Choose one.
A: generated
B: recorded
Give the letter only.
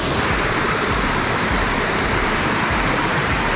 A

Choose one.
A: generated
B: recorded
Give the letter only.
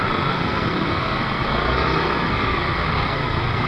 A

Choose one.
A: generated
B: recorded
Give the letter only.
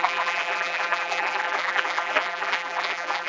A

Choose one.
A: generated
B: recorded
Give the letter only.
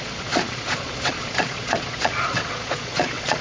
A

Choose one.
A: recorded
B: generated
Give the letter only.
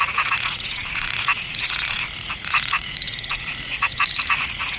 B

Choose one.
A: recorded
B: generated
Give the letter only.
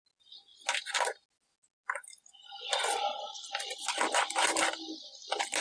A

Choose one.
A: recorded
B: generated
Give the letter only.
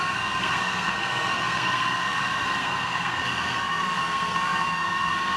B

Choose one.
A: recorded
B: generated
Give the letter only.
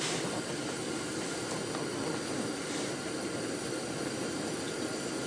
A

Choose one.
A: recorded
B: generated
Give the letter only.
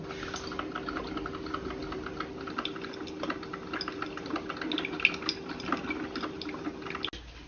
A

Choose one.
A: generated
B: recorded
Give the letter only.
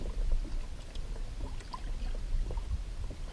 B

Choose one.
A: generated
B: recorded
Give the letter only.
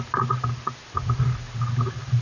B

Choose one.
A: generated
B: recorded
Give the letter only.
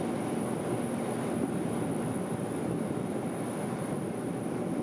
B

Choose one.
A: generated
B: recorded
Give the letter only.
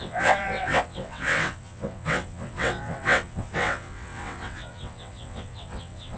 A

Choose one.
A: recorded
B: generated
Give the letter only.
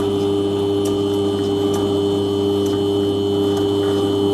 A